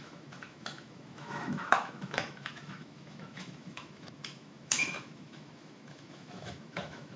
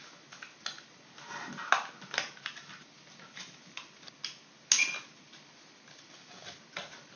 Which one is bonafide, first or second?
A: second